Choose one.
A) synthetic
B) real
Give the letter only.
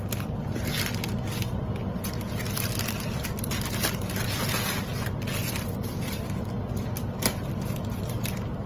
B